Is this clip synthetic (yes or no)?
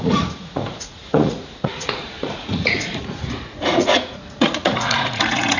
yes